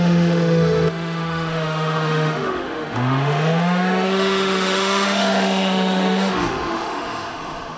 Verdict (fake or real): fake